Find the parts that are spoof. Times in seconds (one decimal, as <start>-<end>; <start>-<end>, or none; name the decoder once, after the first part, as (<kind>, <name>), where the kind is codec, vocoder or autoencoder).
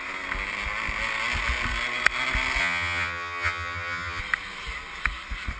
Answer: 2.6-4.2 (vocoder, HiFi-GAN)